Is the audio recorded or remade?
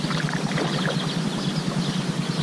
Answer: recorded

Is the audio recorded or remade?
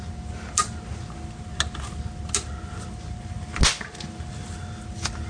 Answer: recorded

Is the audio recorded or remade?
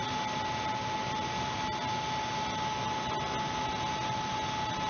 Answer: recorded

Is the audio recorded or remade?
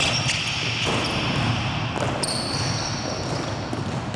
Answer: recorded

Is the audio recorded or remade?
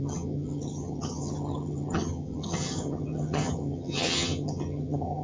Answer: remade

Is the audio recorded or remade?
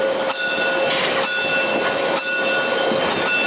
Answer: recorded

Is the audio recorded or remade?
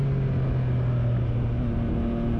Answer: recorded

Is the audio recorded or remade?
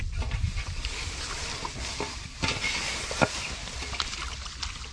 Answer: recorded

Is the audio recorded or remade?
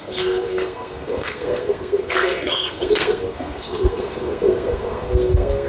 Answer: remade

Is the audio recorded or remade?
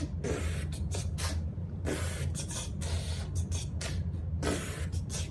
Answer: recorded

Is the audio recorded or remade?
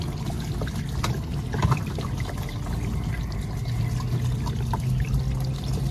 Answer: recorded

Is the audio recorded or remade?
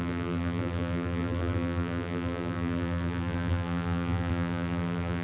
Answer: remade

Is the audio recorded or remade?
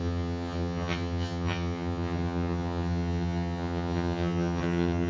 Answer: remade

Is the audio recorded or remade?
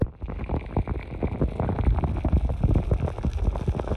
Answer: recorded